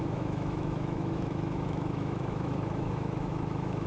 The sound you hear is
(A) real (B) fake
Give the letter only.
B